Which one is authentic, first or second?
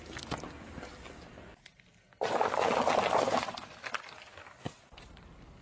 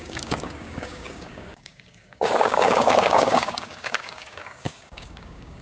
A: first